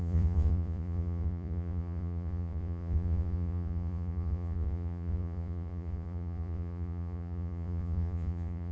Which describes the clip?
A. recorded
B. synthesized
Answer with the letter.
B